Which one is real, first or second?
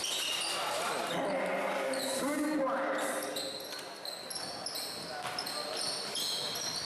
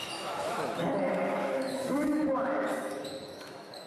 first